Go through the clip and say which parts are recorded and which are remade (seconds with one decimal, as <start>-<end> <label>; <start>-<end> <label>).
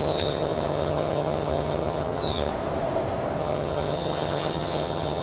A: 0.0-2.5 remade; 2.5-3.4 recorded; 3.4-5.2 remade